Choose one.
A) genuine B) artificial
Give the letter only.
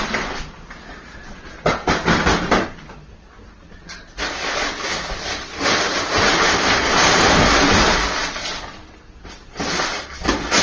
A